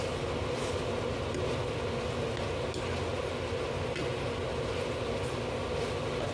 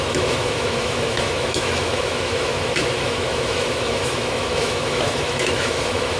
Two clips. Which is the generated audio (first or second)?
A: second